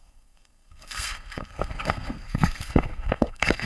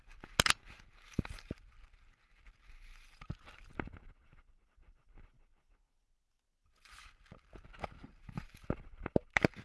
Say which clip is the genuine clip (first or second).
second